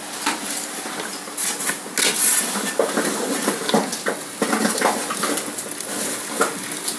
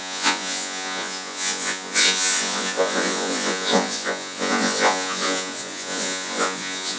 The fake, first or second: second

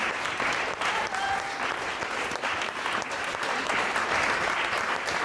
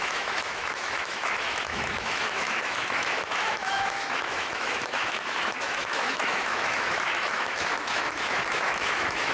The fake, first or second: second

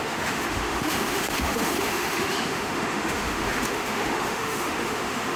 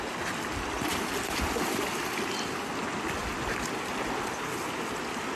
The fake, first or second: first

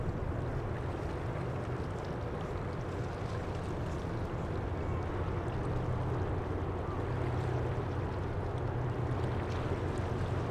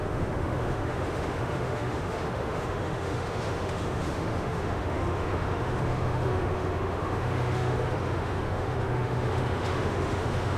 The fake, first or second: second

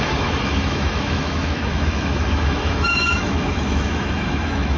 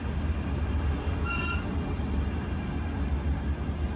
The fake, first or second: first